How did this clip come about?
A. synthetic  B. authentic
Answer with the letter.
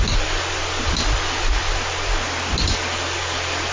B